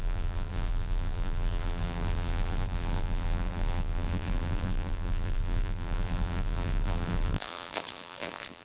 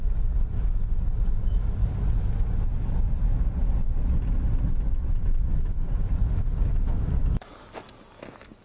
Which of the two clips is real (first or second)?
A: second